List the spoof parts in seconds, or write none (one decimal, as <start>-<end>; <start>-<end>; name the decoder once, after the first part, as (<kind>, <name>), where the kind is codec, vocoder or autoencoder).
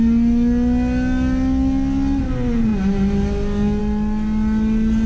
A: none